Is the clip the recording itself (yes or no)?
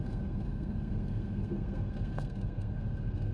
no